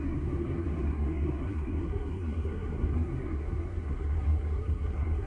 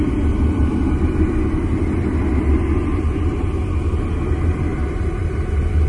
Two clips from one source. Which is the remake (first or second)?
first